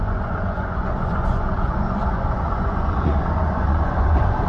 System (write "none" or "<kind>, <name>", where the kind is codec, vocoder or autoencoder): vocoder, Vocos